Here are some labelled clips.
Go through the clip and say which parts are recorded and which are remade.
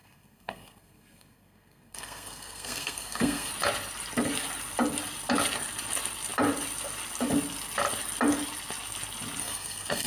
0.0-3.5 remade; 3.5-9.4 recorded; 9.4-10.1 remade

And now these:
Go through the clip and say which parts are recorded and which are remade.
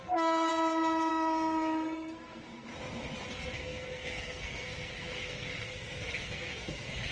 0.0-0.5 remade; 0.5-1.1 recorded; 1.1-2.7 remade; 2.7-3.3 recorded; 3.3-7.1 remade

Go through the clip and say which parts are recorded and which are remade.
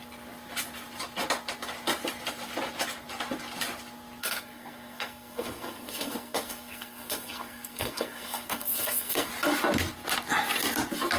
0.0-4.2 recorded; 4.2-9.3 remade; 9.3-11.2 recorded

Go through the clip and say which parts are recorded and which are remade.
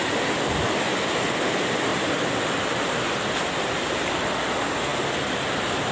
0.0-5.9 recorded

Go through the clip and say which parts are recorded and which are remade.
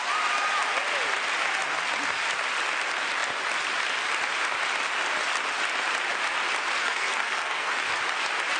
0.0-6.8 recorded; 6.8-7.7 remade; 7.7-8.6 recorded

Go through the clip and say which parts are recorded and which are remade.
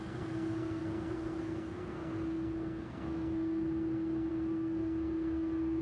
0.0-5.8 remade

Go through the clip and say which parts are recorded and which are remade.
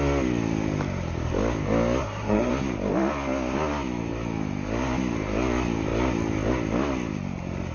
0.0-2.0 recorded; 2.0-2.5 remade; 2.5-7.7 recorded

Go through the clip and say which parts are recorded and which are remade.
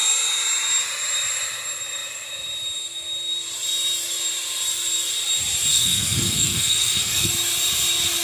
0.0-5.7 recorded; 5.7-7.3 remade; 7.3-8.2 recorded